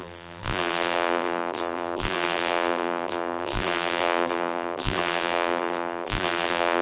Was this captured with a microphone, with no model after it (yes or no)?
no